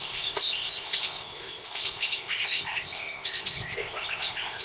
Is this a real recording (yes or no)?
no